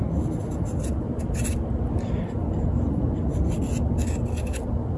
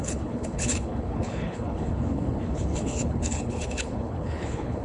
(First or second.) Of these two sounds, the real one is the first